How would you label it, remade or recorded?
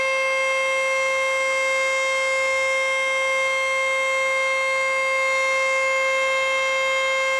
recorded